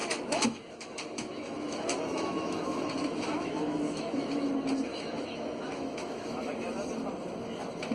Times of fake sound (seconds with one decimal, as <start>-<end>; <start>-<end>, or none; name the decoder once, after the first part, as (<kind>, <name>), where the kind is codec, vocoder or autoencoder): 0.0-4.5 (autoencoder, DAC-VAE); 4.9-6.5